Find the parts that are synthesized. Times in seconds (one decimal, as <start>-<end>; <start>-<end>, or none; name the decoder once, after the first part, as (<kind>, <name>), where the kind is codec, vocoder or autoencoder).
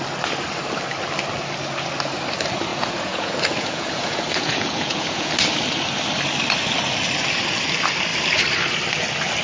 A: 2.7-5.3 (vocoder, Vocos)